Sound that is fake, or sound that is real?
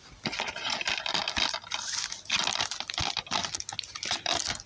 real